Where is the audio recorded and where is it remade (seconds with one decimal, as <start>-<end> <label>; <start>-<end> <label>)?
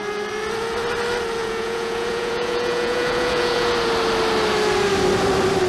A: 0.0-1.4 recorded; 1.4-3.7 remade; 3.7-5.7 recorded